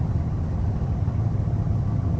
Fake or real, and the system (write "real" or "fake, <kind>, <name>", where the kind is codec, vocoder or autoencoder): real